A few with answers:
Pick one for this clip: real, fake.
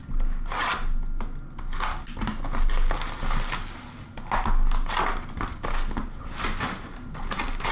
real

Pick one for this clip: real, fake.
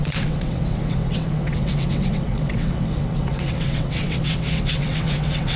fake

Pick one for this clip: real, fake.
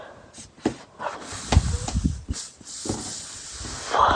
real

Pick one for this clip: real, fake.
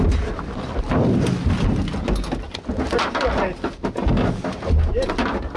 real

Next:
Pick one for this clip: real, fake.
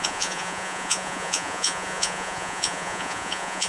fake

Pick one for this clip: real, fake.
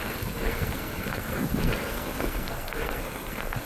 fake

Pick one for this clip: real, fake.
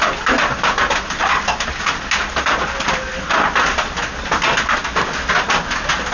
real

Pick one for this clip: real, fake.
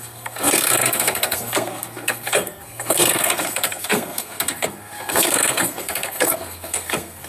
fake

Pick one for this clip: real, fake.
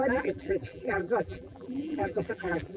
fake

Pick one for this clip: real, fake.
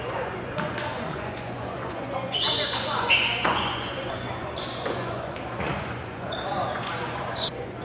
fake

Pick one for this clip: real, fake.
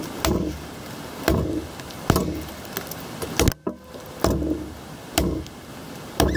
real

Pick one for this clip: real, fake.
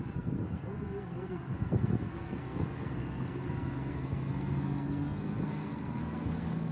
fake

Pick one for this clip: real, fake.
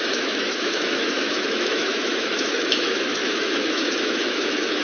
fake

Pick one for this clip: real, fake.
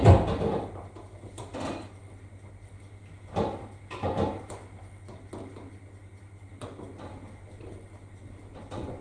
real